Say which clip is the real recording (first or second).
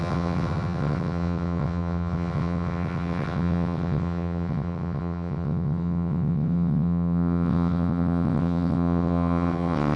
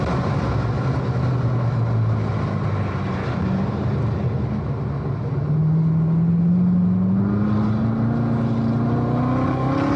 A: second